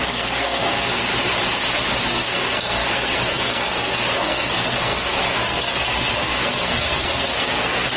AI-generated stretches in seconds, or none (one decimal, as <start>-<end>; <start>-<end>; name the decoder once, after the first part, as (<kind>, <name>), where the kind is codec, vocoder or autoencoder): 0.0-1.1 (codec, SNAC); 2.1-8.0